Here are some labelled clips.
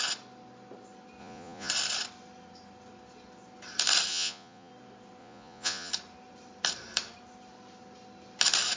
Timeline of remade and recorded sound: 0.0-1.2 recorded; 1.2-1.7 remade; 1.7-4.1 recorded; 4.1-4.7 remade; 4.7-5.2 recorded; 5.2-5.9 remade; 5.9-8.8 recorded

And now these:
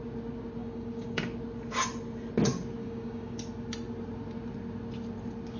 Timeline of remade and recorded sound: 0.0-0.6 recorded; 0.6-1.2 remade; 1.2-2.8 recorded; 2.8-3.4 remade; 3.4-5.6 recorded

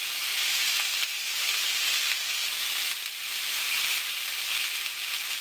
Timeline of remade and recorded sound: 0.0-5.4 recorded

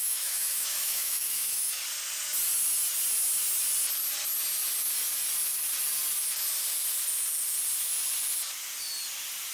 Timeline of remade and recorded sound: 0.0-1.8 remade; 1.8-9.5 recorded

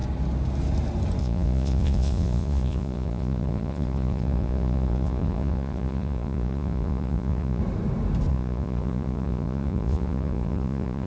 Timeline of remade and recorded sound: 0.0-1.2 recorded; 1.2-7.6 remade; 7.6-8.3 recorded; 8.3-11.1 remade

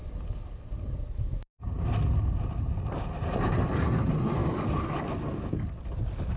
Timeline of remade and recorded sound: 0.0-6.4 recorded

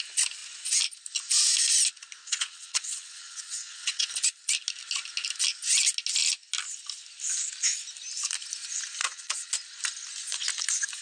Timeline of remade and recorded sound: 0.0-2.2 recorded; 2.2-4.1 remade; 4.1-9.0 recorded; 9.0-9.5 remade; 9.5-11.0 recorded

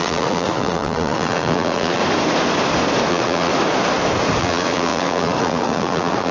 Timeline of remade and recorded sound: 0.0-2.0 remade; 2.0-3.1 recorded; 3.1-3.5 remade; 3.5-4.4 recorded; 4.4-6.3 remade